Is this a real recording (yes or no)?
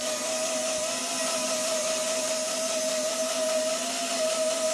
yes